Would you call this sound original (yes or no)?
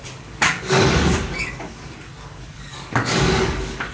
no